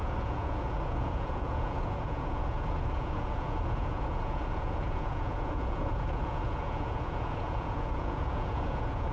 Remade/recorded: remade